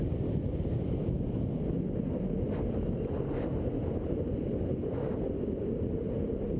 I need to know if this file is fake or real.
real